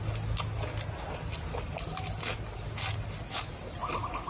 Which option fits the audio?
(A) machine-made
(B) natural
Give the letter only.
B